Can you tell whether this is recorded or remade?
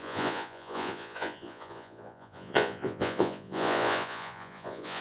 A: remade